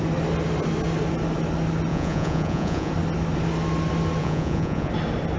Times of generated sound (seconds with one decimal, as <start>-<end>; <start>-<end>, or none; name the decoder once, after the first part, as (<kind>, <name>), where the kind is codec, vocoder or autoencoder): 1.9-2.9 (vocoder, Vocos); 4.2-4.9